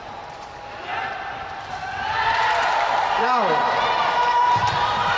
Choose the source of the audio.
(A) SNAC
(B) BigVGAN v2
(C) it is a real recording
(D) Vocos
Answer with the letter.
B